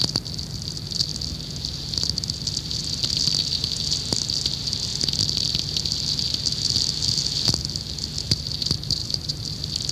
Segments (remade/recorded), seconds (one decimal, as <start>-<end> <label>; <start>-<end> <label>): 0.0-9.0 recorded; 9.0-9.9 remade